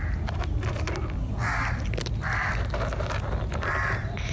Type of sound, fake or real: real